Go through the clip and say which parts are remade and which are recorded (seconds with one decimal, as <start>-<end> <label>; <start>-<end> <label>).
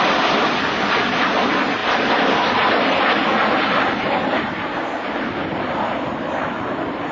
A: 0.0-7.1 recorded